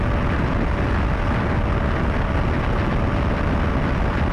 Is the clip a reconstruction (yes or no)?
no